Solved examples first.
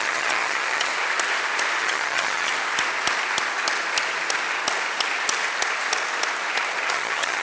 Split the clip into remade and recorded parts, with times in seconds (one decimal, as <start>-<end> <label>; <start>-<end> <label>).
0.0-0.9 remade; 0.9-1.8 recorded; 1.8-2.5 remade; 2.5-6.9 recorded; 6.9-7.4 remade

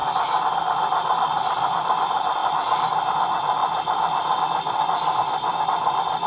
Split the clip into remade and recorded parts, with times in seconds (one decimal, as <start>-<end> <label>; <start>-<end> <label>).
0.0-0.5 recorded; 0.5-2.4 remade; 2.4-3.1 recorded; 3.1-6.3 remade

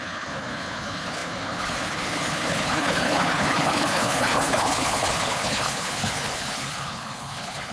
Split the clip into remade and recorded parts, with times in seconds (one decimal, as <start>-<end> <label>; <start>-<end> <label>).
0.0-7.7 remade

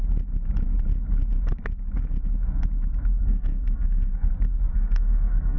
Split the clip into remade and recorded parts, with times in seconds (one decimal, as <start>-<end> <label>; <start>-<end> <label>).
0.0-3.2 recorded; 3.2-4.3 remade; 4.3-4.7 recorded; 4.7-5.6 remade